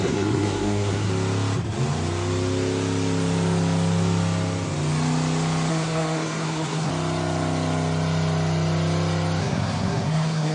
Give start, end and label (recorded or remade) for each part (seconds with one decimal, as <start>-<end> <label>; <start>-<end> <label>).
0.0-1.1 remade; 1.1-5.7 recorded; 5.7-6.9 remade; 6.9-9.4 recorded; 9.4-10.5 remade